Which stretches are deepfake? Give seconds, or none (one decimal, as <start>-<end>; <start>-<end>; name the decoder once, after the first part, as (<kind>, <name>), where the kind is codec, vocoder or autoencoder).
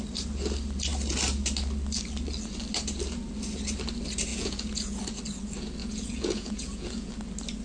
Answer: 4.3-5.0 (vocoder, Vocos); 5.8-7.1